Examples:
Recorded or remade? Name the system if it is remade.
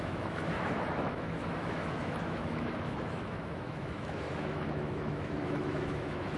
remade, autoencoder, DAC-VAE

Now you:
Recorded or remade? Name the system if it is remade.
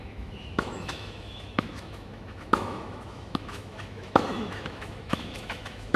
remade, autoencoder, DAC-VAE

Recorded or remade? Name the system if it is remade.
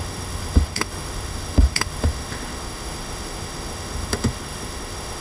remade, autoencoder, DAC-VAE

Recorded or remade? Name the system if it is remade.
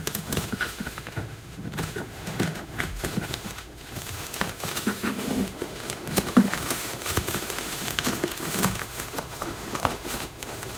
remade, autoencoder, DAC-VAE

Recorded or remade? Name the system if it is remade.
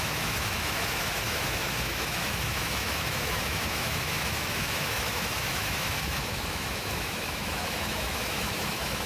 remade, autoencoder, DAC-VAE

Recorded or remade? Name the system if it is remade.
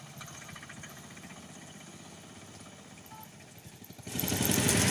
recorded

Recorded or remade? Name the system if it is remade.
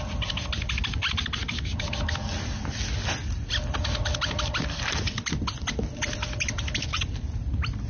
recorded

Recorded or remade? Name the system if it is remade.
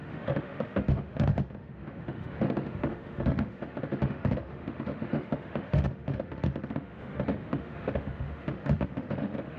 remade, autoencoder, DAC-VAE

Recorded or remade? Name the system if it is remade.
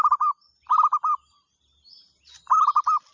recorded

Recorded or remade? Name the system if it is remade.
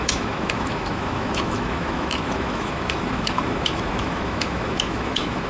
remade, autoencoder, DAC-VAE